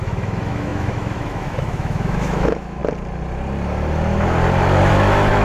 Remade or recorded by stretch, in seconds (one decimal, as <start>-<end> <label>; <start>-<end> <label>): 0.0-2.8 remade; 2.8-4.9 recorded; 4.9-5.4 remade